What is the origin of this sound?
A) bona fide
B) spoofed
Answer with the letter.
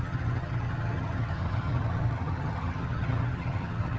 B